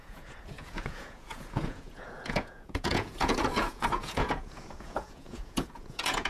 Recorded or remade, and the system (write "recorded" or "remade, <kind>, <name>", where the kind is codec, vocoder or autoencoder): remade, vocoder, Vocos